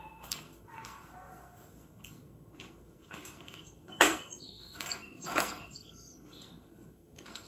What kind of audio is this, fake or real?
fake